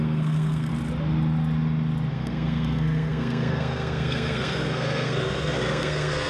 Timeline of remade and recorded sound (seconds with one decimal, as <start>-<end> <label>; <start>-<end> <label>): 0.0-0.7 remade; 0.7-2.1 recorded; 2.1-6.3 remade